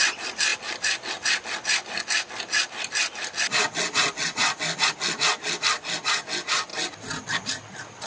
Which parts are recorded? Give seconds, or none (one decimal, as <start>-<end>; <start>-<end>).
0.0-8.1